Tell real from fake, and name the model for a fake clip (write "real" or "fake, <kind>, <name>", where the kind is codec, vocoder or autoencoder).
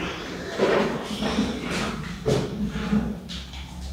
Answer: real